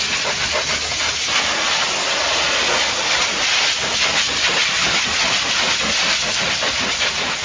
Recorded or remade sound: recorded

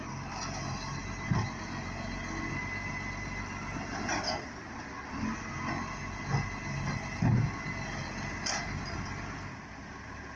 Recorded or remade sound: recorded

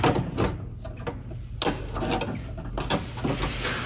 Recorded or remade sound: recorded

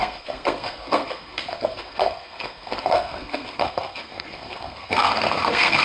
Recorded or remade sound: remade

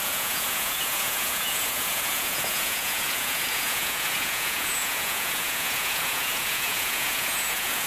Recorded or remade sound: remade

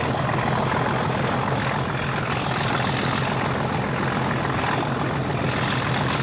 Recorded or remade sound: recorded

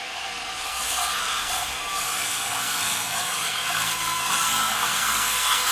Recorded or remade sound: remade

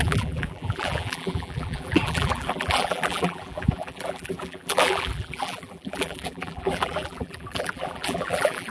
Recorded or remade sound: remade